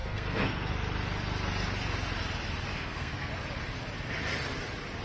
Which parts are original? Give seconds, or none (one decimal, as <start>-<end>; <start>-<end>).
0.7-2.7; 3.3-5.0